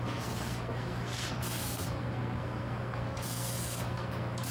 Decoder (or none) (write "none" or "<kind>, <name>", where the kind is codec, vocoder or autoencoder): codec, SNAC